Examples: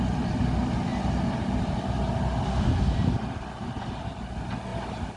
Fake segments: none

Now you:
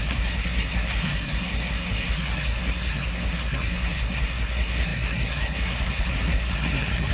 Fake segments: 0.0-7.1 (codec, SNAC)

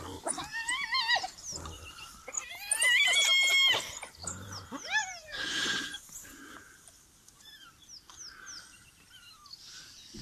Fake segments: 5.0-7.4 (vocoder, BigVGAN v2)